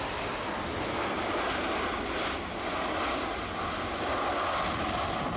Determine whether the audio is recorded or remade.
recorded